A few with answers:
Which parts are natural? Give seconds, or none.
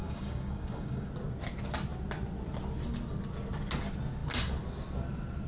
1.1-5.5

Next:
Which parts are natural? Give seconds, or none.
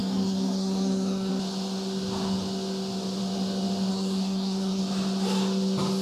1.3-3.9; 4.8-6.0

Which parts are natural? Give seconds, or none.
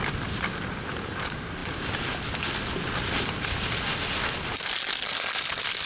0.0-5.9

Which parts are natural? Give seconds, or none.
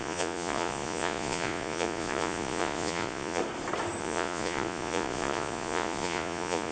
3.4-4.0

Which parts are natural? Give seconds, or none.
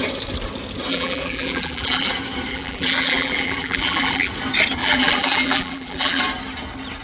0.0-0.9; 2.1-2.5; 4.3-4.8; 6.2-7.0